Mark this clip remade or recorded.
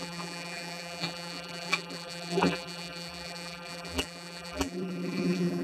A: remade